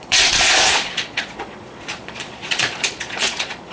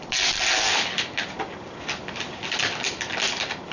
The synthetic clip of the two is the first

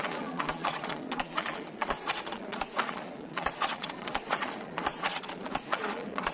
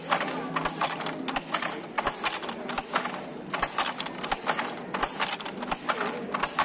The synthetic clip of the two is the first